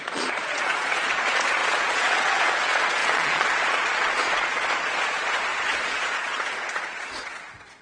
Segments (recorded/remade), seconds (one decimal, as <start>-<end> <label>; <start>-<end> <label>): 0.0-7.8 remade